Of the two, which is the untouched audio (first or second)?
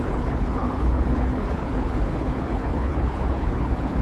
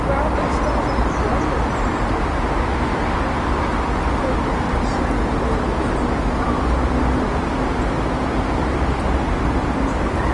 second